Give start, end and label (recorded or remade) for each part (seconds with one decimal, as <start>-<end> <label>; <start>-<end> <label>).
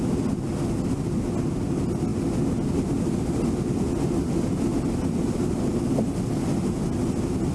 0.0-7.5 recorded